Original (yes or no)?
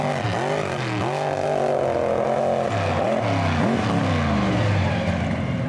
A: yes